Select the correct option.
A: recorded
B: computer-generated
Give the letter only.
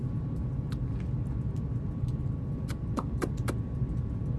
A